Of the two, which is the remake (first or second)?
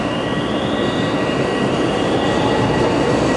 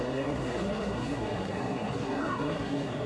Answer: second